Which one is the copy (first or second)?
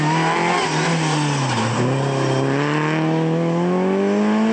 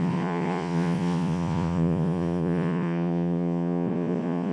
second